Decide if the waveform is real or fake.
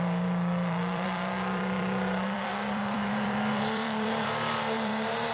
fake